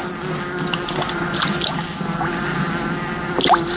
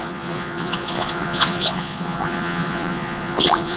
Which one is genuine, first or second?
first